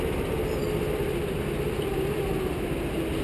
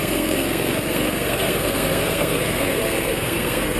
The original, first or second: first